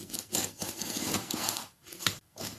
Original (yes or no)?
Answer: no